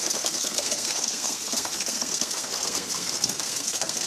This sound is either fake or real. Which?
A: fake